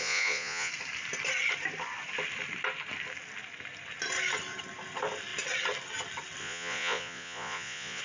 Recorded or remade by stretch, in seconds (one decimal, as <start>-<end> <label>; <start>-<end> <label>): 0.0-0.7 remade; 0.7-6.4 recorded; 6.4-8.0 remade